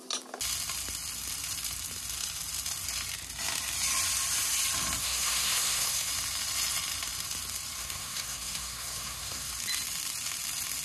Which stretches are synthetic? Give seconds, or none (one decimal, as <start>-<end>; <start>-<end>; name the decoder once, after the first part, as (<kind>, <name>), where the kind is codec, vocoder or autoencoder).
5.0-6.1 (codec, SNAC); 7.8-9.5